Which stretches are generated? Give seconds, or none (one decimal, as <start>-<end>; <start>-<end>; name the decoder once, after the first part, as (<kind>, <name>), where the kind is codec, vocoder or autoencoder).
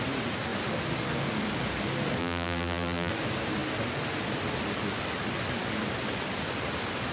2.2-3.1 (vocoder, BigVGAN v2)